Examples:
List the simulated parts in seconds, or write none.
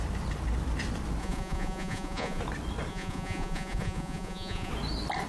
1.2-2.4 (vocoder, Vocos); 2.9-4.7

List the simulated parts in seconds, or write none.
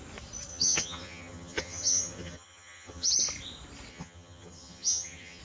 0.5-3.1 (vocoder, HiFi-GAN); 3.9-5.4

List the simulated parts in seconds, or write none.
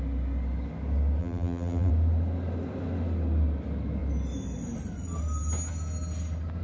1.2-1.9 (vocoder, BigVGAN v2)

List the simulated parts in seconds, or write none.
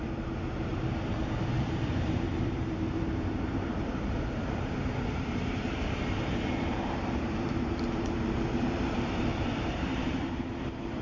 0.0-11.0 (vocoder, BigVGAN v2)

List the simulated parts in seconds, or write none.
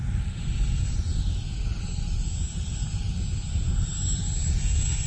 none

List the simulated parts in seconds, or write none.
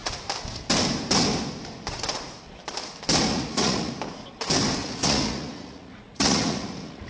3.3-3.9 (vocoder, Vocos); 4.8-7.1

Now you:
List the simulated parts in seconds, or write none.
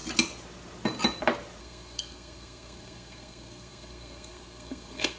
1.6-5.2 (codec, SNAC)